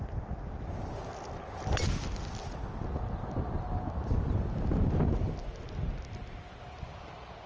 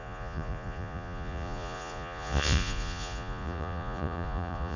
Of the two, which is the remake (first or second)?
second